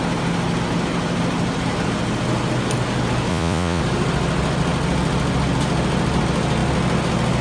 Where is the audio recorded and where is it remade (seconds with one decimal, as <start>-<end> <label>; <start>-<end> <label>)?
0.0-3.3 recorded; 3.3-3.8 remade; 3.8-7.4 recorded